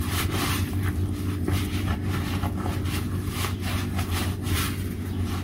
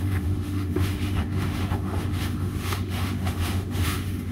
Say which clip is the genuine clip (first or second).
first